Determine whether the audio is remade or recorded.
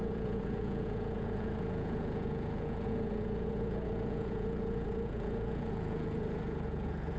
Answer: remade